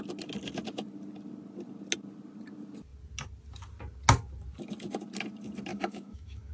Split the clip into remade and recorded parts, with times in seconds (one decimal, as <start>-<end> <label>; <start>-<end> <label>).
0.0-5.7 recorded; 5.7-6.5 remade